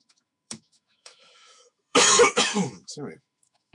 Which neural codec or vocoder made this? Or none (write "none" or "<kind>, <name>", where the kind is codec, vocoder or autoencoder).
autoencoder, DAC-VAE